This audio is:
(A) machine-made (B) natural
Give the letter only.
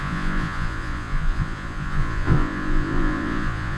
A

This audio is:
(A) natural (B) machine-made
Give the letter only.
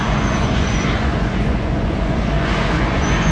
B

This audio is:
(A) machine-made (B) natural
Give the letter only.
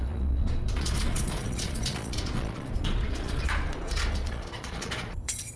A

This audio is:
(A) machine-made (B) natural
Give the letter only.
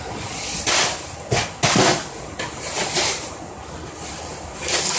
B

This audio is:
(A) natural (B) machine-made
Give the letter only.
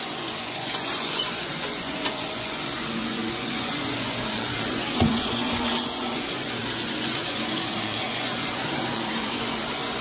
B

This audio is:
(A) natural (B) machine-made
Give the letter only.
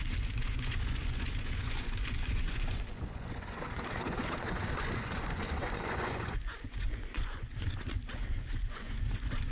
B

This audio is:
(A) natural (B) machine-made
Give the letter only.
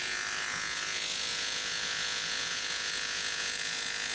B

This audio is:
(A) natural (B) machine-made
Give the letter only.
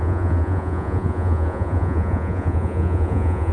B